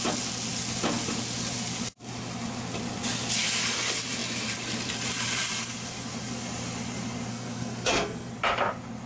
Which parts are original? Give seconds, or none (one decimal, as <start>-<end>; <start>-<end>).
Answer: 0.0-7.3; 8.3-9.1